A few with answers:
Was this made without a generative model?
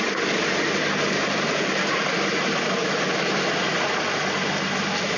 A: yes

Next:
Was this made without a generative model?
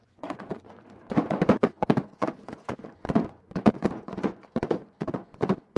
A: no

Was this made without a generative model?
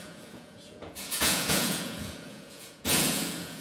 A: no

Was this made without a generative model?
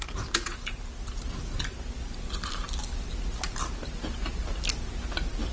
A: yes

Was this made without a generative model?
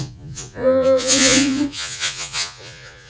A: no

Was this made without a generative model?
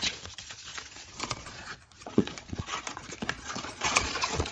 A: no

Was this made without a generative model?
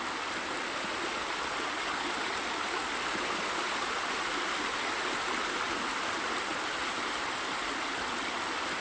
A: yes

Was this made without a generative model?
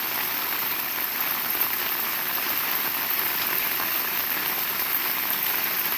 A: yes